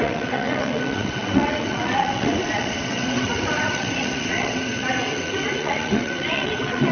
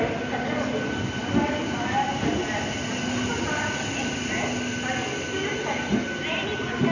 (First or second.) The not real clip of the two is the first